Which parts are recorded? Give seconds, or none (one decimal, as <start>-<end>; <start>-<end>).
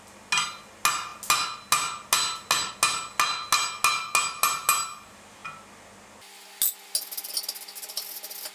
0.0-8.5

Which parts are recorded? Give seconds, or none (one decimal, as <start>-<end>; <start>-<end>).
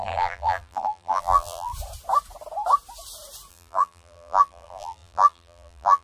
1.7-3.5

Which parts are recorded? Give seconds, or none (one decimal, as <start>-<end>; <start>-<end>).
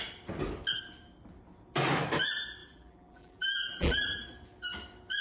0.0-2.6; 4.2-5.2